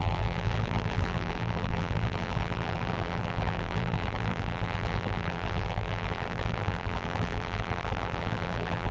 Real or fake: fake